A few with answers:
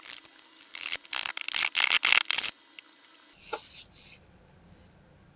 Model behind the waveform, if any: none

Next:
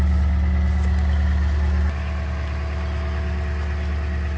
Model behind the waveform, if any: none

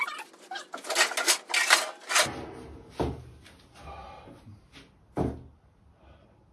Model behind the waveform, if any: none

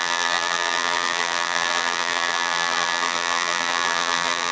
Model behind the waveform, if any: vocoder, BigVGAN v2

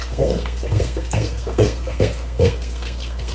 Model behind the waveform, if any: codec, SNAC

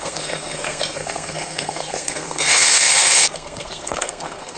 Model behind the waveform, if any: codec, SNAC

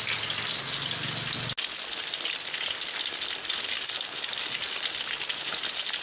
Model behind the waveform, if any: none